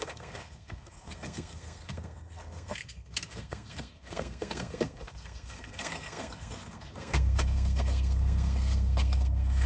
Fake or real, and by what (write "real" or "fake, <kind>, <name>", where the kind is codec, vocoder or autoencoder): fake, codec, SNAC